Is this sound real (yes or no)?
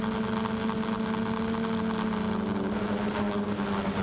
yes